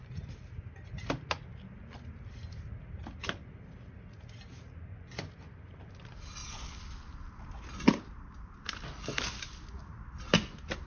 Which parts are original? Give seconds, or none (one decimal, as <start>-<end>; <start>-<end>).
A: 0.0-4.9; 5.5-10.9